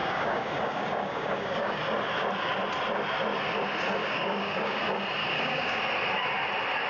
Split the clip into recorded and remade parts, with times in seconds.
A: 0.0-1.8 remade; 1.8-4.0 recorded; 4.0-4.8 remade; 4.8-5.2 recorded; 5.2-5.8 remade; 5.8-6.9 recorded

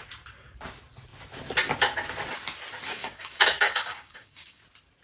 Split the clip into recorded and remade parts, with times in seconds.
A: 0.0-3.0 recorded; 3.0-4.6 remade; 4.6-5.0 recorded